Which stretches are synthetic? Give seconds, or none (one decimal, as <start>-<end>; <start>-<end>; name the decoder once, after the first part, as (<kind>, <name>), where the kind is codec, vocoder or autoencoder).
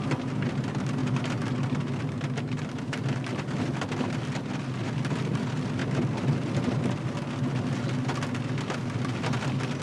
none